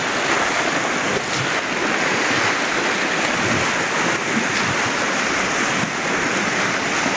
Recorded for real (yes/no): yes